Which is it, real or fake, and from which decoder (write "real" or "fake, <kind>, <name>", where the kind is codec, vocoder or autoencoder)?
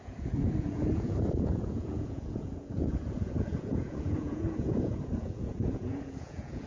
fake, vocoder, Vocos